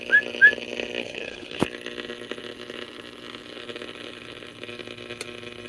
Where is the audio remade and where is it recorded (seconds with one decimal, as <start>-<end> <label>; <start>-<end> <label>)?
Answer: 0.0-1.0 recorded; 1.0-1.6 remade; 1.6-5.7 recorded